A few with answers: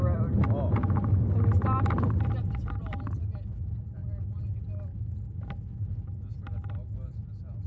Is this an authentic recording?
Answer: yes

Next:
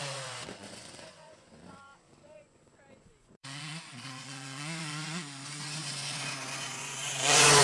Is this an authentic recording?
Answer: no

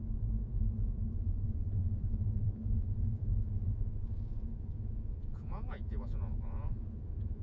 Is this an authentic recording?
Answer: no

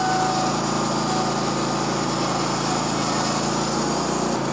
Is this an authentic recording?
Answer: yes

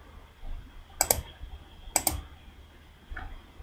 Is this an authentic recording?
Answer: yes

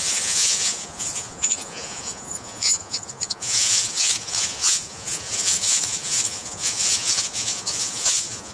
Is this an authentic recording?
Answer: no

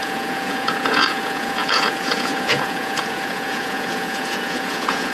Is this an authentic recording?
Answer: no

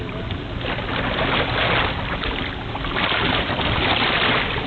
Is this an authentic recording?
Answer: yes